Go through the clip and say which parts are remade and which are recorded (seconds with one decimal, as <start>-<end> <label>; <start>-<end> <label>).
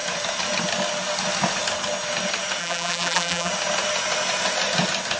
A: 0.0-2.6 recorded; 2.6-3.5 remade; 3.5-5.2 recorded